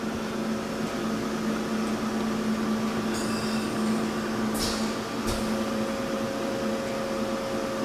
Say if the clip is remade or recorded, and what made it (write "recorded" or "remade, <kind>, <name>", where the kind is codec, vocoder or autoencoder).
recorded